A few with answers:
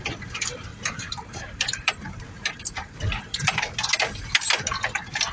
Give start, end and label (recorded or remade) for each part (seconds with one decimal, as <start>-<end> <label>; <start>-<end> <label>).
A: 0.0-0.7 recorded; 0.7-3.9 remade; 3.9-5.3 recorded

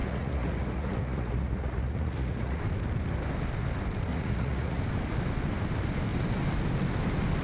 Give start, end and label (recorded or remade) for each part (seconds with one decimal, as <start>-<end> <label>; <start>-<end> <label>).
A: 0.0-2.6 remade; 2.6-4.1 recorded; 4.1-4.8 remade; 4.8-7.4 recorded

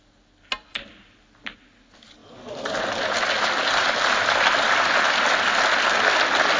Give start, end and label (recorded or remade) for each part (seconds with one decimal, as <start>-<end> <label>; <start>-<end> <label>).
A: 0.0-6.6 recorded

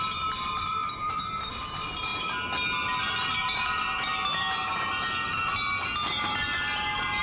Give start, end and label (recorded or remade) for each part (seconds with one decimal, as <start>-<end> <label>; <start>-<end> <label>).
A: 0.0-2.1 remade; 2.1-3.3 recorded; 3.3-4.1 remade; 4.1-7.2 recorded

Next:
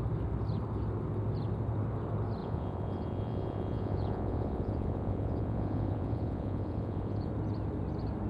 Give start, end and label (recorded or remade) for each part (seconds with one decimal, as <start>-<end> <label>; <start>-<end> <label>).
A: 0.0-2.4 recorded; 2.4-7.3 remade; 7.3-8.3 recorded

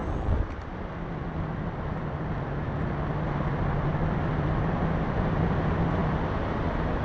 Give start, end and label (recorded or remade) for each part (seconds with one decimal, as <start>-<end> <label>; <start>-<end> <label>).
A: 0.0-7.0 recorded

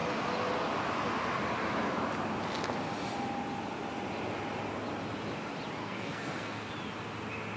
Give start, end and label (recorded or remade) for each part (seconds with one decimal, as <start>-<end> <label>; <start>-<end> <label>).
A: 0.0-5.8 recorded; 5.8-6.7 remade; 6.7-7.6 recorded

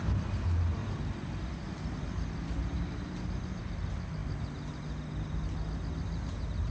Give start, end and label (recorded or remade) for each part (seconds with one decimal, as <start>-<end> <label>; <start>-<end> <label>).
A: 0.0-6.7 recorded